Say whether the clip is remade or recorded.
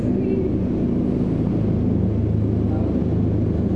recorded